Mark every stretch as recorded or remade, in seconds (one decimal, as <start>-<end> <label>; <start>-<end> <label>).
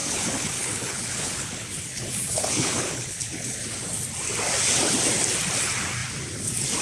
0.0-3.8 remade; 3.8-6.8 recorded